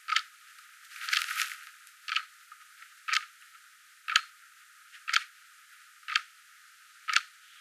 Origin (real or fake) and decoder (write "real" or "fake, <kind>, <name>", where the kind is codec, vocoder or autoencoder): real